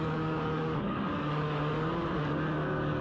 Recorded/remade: remade